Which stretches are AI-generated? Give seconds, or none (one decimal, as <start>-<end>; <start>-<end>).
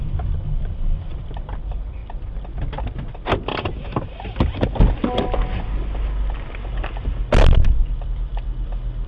0.0-2.0; 6.7-9.1